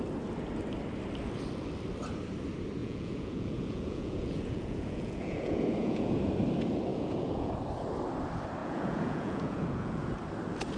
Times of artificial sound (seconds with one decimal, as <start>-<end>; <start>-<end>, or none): 2.8-6.1; 6.9-7.5; 8.6-10.1

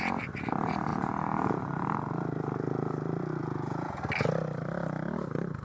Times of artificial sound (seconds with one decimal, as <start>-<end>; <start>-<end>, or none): 0.9-1.6; 3.4-4.0

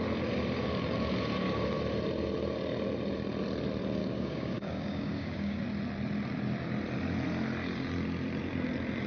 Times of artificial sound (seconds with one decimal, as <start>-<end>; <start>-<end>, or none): 4.0-5.6